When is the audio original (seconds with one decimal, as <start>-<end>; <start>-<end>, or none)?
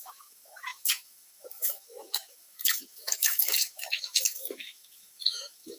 none